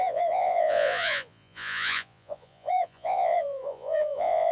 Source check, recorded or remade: remade